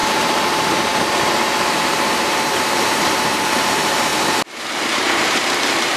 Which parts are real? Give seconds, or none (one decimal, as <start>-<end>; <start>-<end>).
0.9-1.7; 4.1-4.8